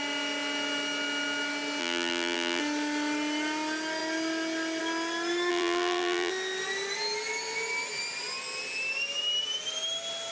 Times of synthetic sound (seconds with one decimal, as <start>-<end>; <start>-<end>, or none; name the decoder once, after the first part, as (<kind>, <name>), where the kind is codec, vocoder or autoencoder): 1.8-2.6 (vocoder, BigVGAN v2); 5.5-6.3